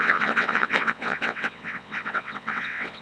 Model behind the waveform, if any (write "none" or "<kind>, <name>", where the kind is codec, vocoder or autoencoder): vocoder, WaveNeXt